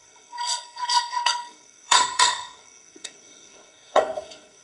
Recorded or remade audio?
remade